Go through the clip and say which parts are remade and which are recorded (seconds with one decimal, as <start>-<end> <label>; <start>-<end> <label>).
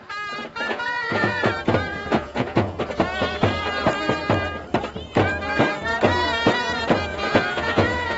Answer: 0.0-0.7 recorded; 0.7-1.4 remade; 1.4-1.9 recorded; 1.9-2.8 remade; 2.8-7.1 recorded; 7.1-8.2 remade